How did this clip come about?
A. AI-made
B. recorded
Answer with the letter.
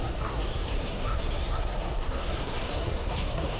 A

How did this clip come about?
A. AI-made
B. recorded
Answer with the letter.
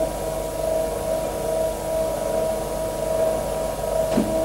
B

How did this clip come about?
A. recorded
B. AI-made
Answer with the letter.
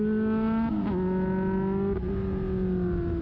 A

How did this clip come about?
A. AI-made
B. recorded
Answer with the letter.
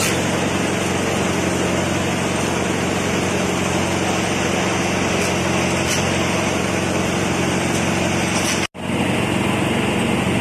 B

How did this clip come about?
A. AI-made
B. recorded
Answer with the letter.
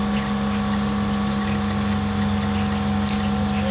B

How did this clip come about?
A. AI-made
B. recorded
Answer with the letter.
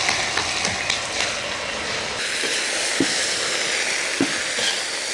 B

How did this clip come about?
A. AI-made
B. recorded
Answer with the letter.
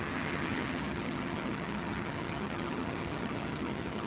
A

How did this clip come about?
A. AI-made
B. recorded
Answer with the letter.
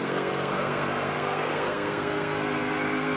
A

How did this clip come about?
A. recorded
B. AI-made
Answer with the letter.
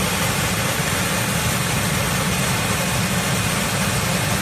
A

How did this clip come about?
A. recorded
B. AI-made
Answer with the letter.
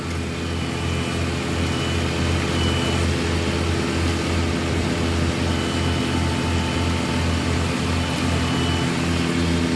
A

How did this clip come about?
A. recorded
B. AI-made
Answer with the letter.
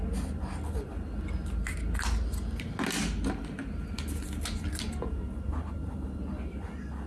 A